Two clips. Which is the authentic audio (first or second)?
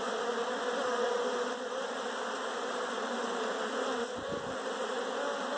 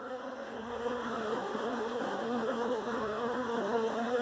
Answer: first